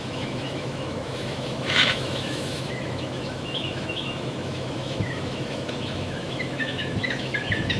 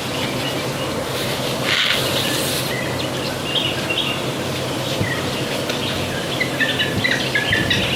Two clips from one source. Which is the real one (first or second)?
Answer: second